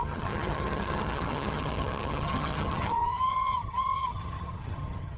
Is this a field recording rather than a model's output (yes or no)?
no